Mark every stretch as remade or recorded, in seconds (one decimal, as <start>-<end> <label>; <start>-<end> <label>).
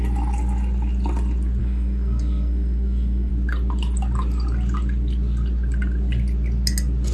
0.0-1.6 recorded; 1.6-3.3 remade; 3.3-7.1 recorded